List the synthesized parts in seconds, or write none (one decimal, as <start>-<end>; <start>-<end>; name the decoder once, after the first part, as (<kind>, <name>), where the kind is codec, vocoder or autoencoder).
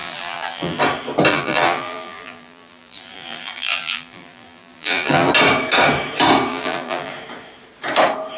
0.0-0.8 (vocoder, BigVGAN v2); 1.3-5.3; 6.5-7.1